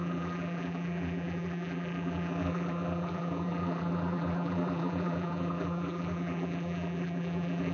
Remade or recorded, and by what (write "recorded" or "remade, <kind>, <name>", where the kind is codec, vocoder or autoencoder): remade, vocoder, BigVGAN v2